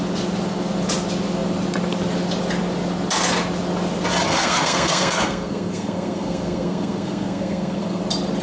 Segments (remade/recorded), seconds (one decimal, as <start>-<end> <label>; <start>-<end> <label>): 0.0-4.3 recorded; 4.3-8.0 remade; 8.0-8.4 recorded